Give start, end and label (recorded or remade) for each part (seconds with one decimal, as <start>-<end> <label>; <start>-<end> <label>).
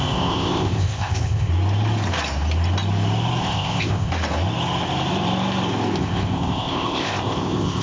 0.0-1.5 remade; 1.5-3.4 recorded; 3.4-4.1 remade; 4.1-6.0 recorded; 6.0-7.8 remade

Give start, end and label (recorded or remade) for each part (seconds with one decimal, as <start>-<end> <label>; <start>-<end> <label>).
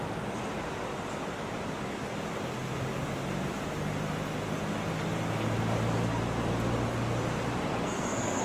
0.0-7.7 recorded; 7.7-8.4 remade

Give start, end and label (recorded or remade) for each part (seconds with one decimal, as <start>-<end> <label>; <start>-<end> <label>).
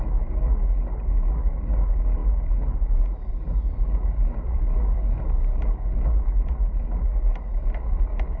0.0-8.4 recorded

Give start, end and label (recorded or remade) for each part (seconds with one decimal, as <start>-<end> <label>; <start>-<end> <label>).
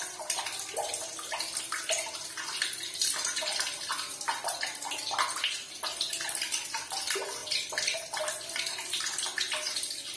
0.0-10.2 recorded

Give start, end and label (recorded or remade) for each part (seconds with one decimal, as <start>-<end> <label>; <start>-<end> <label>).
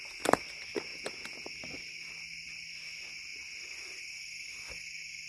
0.0-0.9 recorded; 0.9-1.5 remade; 1.5-5.3 recorded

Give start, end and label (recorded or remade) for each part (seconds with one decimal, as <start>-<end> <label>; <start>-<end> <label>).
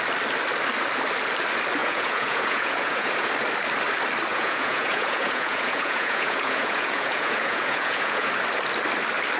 0.0-1.8 recorded; 1.8-3.3 remade; 3.3-4.3 recorded; 4.3-8.3 remade; 8.3-9.4 recorded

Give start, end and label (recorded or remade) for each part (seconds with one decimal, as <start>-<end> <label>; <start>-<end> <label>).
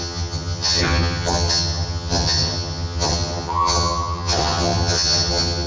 0.0-5.7 remade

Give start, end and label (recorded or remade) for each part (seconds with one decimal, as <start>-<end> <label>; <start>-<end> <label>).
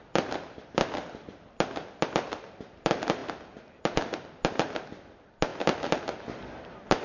0.0-7.0 recorded